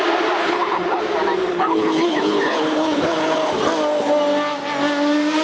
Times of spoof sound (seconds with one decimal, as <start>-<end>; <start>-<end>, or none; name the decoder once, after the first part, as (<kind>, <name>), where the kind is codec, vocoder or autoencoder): 0.4-1.0 (codec, HILCodec); 1.5-3.5